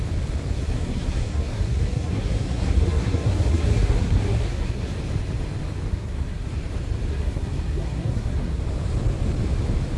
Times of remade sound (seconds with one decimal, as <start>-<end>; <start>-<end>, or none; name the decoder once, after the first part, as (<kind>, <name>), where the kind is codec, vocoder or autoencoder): 0.5-4.9 (codec, SNAC); 5.9-6.5; 7.1-8.6